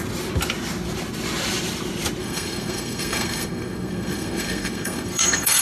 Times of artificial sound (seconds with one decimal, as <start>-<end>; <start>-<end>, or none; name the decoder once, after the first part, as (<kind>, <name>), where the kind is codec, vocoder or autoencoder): 2.2-5.6 (codec, SNAC)